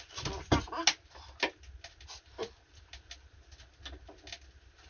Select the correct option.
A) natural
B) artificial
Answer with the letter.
A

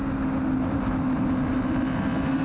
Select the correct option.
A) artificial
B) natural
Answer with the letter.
B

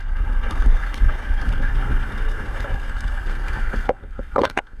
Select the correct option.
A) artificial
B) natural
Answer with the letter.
A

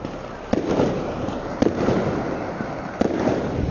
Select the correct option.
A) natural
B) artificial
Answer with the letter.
A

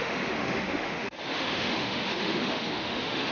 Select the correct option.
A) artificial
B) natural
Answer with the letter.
A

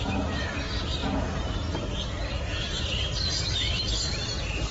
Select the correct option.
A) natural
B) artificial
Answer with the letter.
A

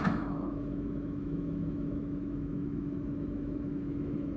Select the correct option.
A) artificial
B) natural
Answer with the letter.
A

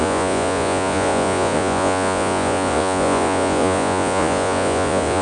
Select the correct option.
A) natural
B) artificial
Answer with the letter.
B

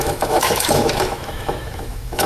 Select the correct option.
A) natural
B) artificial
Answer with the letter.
B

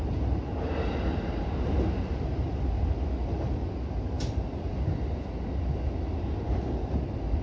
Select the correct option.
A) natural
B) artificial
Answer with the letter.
A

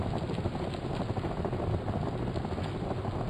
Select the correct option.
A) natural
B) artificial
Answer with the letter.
A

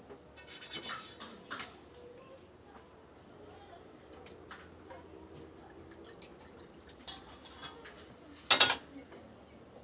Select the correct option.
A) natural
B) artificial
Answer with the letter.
A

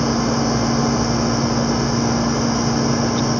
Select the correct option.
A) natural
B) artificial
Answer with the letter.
A